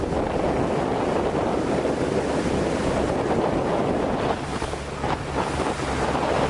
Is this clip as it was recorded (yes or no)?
yes